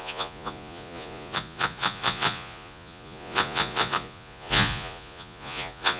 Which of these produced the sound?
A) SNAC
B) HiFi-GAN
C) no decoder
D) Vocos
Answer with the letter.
D